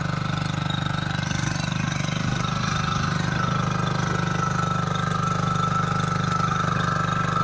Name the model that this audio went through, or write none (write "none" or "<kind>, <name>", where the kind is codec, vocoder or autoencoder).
none